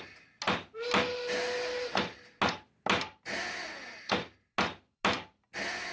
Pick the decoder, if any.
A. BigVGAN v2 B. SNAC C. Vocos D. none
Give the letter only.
D